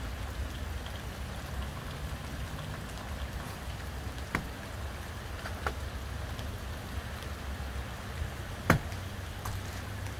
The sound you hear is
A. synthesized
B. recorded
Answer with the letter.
B